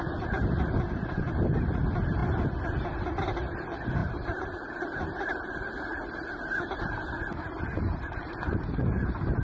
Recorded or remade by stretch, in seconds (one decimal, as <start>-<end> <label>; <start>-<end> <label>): 0.0-4.0 recorded; 4.0-4.7 remade; 4.7-9.4 recorded